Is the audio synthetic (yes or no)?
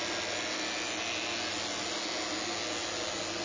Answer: no